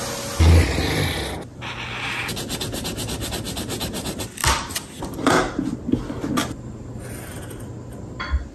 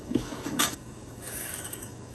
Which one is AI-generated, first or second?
second